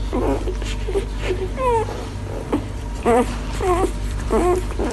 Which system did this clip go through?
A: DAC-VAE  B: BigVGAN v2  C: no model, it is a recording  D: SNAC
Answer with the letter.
B